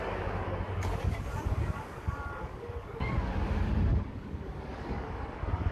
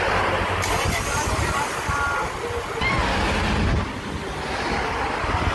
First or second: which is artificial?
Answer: first